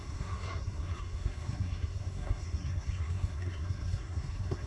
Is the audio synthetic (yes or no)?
yes